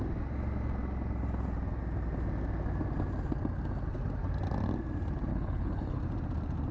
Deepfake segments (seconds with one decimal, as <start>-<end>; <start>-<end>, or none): 5.3-6.0